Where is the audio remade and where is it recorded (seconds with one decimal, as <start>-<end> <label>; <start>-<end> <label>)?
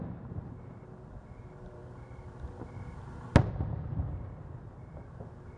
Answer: 0.0-1.8 remade; 1.8-4.2 recorded; 4.2-5.6 remade